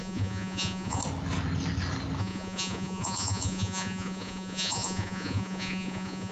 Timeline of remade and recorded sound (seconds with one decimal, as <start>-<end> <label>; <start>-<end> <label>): 0.0-1.0 remade; 1.0-2.2 recorded; 2.2-6.3 remade